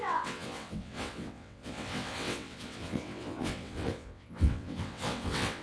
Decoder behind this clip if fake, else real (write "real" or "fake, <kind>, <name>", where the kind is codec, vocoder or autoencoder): fake, vocoder, WaveNeXt